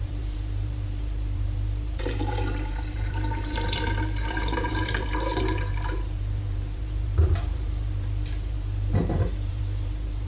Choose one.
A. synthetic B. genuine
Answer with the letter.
A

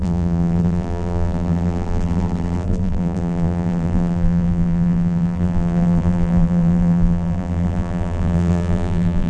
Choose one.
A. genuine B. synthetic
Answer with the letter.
B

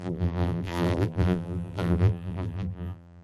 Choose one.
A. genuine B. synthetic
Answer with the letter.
B